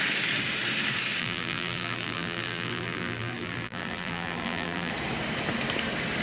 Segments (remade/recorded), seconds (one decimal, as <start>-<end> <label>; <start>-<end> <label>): 0.0-1.2 recorded; 1.2-4.9 remade; 4.9-6.2 recorded